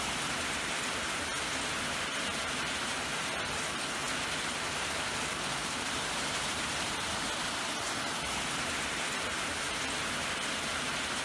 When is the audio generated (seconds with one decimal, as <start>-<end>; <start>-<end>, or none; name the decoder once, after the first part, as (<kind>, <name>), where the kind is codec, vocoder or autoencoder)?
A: none

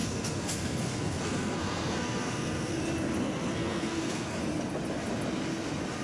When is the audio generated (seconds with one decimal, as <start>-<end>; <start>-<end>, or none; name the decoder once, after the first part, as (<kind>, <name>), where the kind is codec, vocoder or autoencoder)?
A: 0.0-2.8 (codec, SNAC); 3.2-4.4

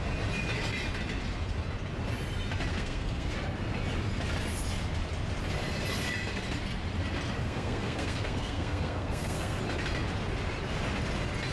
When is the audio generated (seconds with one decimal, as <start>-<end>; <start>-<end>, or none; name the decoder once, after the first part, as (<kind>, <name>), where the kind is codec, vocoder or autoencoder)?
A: 2.7-3.3 (codec, SNAC); 7.4-9.6